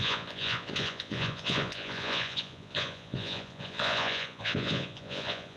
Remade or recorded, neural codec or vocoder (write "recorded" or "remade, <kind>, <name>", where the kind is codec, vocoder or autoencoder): remade, vocoder, Vocos